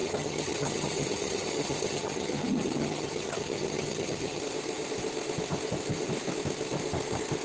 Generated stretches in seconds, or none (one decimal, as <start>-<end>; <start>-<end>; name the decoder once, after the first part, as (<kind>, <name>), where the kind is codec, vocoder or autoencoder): 0.0-4.4 (vocoder, HiFi-GAN)